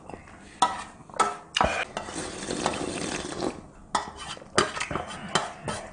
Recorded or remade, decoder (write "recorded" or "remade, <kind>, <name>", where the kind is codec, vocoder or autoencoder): recorded